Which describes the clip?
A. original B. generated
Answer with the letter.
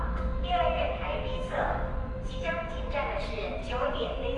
B